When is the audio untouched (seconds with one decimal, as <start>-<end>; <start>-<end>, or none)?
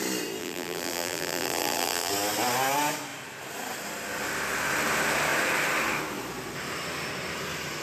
0.0-0.4; 2.1-7.8